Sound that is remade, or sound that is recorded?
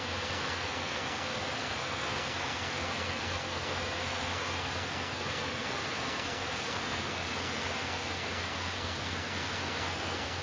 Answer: remade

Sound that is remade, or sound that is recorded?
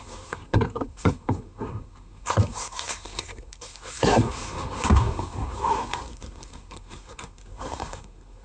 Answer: remade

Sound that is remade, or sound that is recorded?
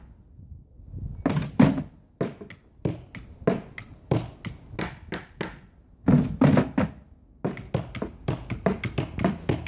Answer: recorded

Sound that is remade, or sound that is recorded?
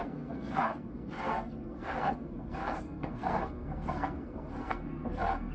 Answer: remade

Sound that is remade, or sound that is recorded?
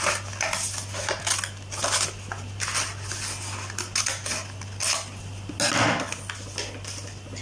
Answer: recorded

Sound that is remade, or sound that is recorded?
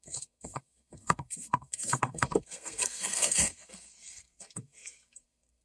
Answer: remade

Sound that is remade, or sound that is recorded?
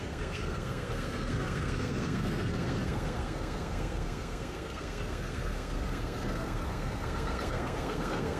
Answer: remade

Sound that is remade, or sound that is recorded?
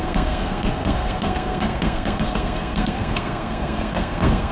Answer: remade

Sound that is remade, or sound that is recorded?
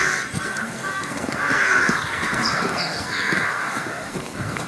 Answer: remade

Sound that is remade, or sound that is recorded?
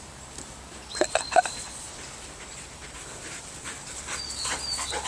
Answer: recorded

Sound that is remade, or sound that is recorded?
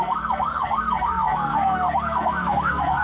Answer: remade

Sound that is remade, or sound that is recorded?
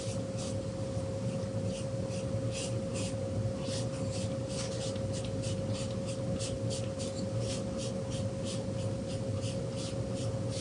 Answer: recorded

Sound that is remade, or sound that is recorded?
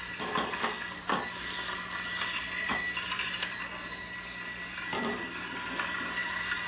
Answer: recorded